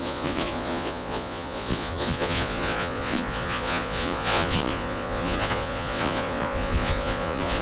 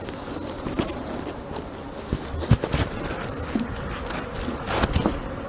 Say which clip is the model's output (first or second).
first